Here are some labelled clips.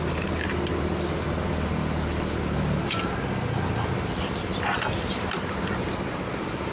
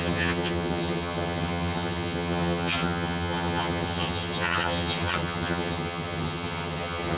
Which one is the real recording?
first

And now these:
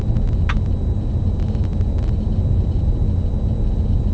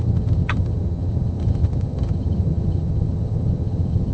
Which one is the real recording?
first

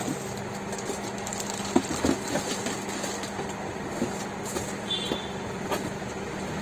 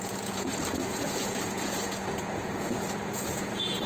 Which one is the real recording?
first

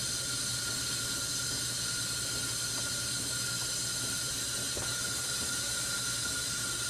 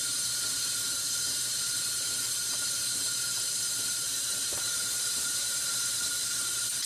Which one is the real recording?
first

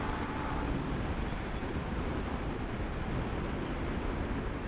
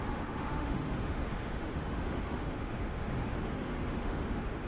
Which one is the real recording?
first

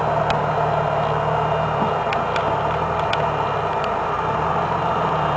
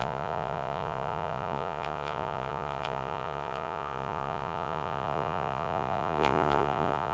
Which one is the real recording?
first